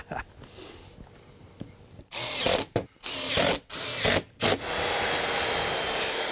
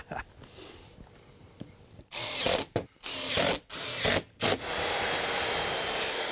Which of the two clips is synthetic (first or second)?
second